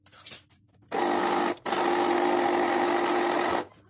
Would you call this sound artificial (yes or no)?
no